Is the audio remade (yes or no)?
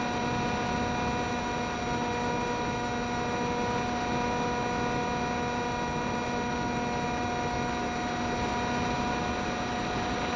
no